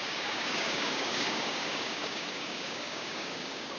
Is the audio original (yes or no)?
no